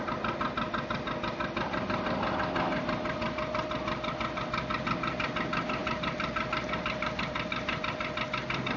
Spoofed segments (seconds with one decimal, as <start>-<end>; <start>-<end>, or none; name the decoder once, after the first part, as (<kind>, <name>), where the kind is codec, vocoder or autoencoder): 5.8-7.8 (vocoder, BigVGAN v2)